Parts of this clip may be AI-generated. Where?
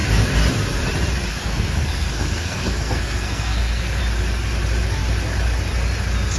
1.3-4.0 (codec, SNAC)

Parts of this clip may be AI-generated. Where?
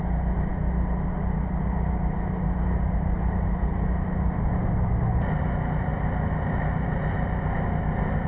none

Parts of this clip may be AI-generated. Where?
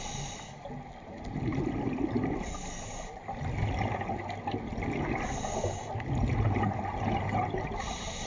none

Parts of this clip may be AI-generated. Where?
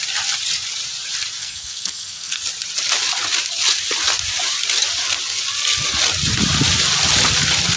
1.4-2.4 (codec, SNAC)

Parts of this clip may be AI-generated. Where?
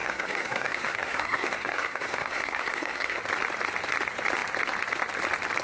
0.0-3.2 (codec, SNAC)